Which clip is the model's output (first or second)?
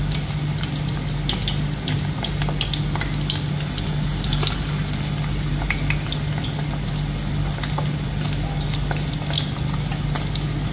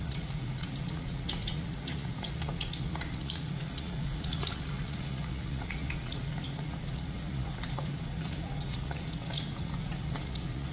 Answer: second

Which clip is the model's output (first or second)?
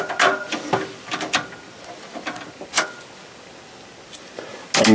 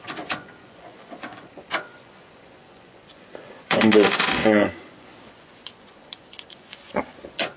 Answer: second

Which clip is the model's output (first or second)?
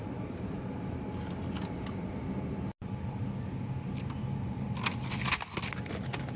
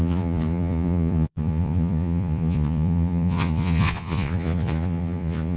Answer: second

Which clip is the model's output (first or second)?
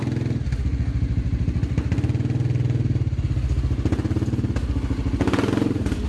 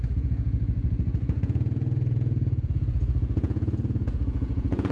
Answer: second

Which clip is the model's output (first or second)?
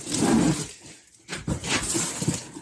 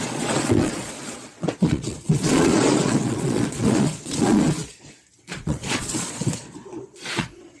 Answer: second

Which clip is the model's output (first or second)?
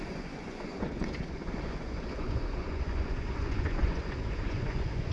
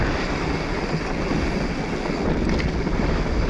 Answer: first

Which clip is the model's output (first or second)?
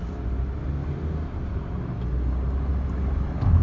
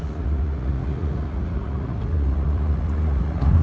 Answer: second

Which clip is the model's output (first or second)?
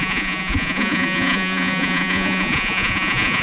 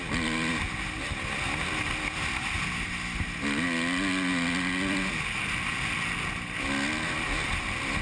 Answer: first